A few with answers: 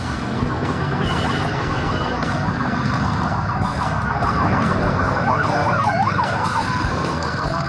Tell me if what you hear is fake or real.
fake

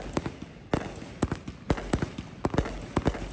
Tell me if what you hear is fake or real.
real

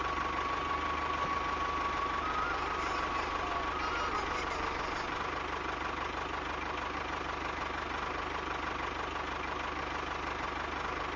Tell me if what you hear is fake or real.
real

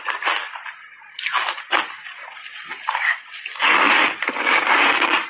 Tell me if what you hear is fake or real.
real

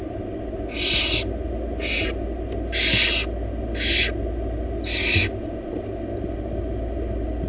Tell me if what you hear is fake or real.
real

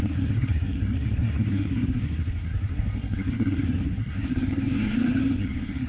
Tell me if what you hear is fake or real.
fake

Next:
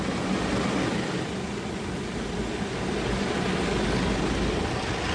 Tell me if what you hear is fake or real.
real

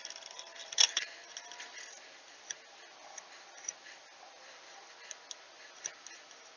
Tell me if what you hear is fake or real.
real